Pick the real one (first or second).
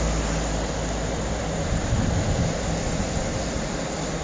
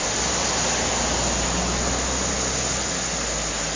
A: second